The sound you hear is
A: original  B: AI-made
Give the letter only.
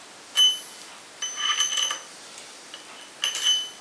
A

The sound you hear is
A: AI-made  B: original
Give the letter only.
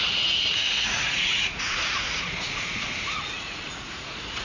A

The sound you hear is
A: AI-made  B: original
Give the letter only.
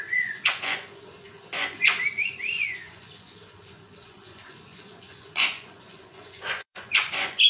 A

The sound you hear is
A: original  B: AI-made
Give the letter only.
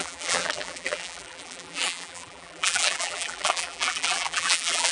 B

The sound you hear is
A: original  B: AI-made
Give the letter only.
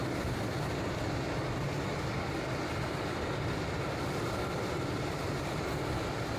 A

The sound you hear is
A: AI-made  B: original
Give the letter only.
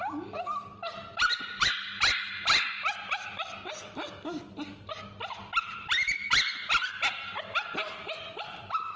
B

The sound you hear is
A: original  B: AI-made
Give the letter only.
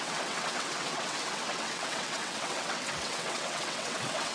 B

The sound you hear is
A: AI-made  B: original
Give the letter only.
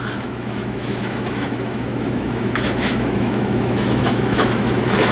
A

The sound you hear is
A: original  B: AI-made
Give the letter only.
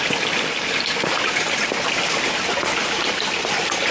A